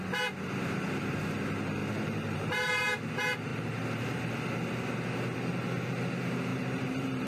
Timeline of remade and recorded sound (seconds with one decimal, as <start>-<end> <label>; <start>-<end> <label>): 0.0-1.8 recorded; 1.8-2.8 remade; 2.8-3.5 recorded; 3.5-4.3 remade; 4.3-6.5 recorded; 6.5-7.3 remade